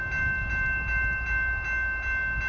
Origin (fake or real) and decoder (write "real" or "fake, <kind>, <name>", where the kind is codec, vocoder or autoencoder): real